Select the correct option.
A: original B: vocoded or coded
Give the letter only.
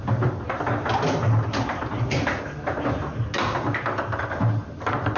A